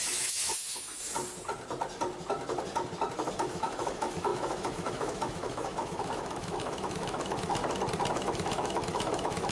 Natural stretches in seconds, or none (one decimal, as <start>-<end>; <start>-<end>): 1.1-3.3; 7.6-8.1